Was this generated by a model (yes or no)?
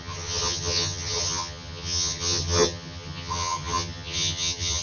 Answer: yes